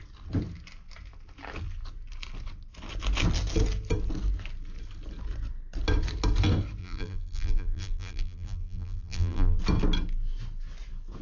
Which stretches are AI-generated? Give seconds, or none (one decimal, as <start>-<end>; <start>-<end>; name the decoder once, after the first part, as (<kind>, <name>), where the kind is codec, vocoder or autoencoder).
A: 6.8-9.6 (vocoder, BigVGAN v2)